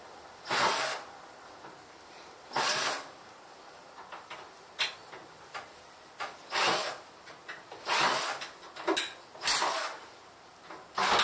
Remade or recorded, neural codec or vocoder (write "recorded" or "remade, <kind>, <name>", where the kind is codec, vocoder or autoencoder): recorded